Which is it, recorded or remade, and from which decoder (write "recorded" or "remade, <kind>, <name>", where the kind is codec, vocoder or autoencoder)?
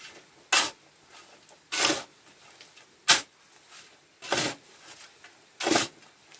recorded